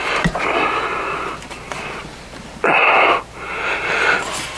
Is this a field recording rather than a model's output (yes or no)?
yes